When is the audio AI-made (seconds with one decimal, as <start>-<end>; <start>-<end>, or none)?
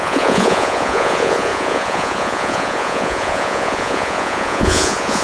0.0-5.2